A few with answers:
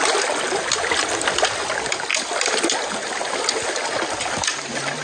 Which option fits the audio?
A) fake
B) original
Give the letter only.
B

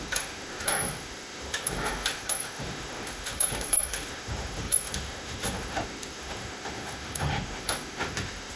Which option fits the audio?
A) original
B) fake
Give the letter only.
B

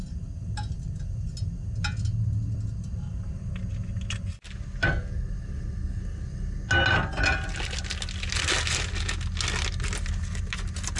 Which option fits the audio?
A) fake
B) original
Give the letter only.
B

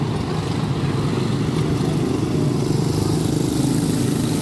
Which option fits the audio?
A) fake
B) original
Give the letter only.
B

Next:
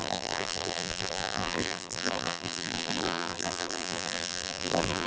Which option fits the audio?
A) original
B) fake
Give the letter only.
B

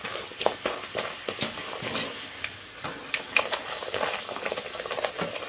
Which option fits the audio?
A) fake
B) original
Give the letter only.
A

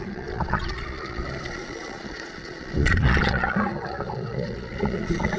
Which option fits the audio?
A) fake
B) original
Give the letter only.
A